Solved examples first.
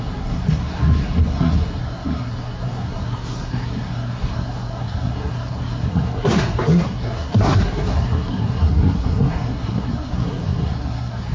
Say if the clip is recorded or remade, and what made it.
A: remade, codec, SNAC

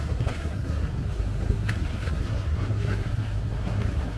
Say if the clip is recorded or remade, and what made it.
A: remade, codec, SNAC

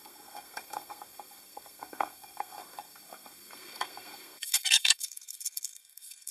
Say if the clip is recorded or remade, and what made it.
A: remade, codec, SNAC